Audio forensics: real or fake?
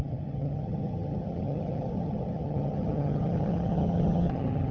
fake